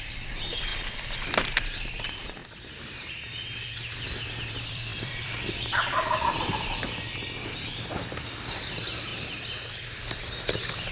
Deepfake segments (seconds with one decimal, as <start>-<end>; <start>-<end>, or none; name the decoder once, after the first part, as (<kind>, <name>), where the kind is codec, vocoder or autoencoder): 0.0-0.7 (vocoder, BigVGAN v2); 1.5-2.4; 4.5-9.1; 9.8-10.9